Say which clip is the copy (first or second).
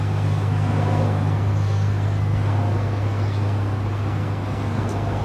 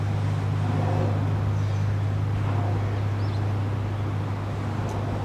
first